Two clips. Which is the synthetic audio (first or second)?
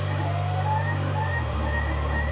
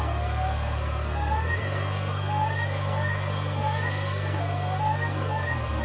second